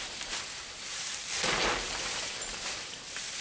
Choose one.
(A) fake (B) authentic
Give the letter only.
A